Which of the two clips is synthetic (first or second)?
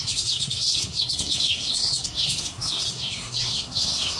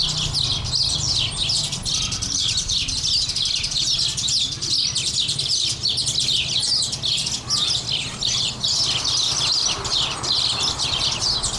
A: first